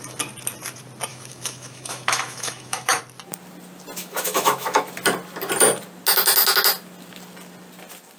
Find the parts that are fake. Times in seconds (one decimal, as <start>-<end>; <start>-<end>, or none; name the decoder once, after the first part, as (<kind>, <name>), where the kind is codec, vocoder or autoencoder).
1.1-3.0 (autoencoder, DAC-VAE); 4.0-4.8